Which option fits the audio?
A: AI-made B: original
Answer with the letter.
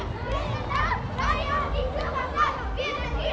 B